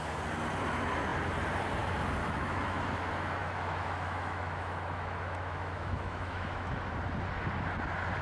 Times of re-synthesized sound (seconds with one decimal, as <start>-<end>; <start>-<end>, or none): 2.2-2.8; 3.4-6.9